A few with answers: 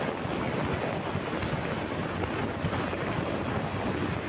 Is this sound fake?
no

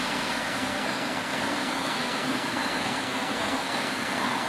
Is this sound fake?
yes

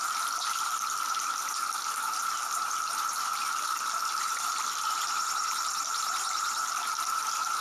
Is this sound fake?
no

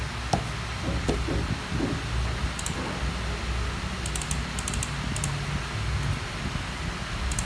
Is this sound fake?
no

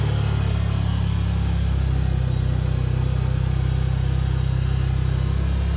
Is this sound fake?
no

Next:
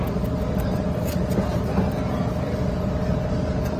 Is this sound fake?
no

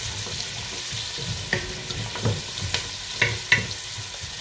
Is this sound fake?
no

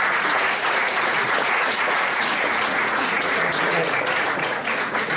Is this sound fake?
yes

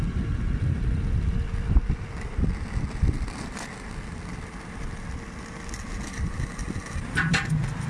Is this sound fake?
no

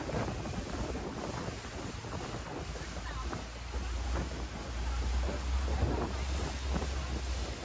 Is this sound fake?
no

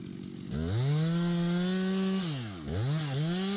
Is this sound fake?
no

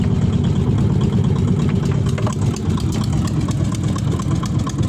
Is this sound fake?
no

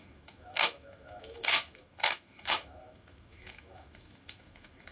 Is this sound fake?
yes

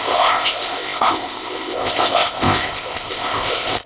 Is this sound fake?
yes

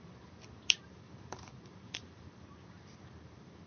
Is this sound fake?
yes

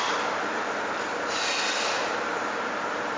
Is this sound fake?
no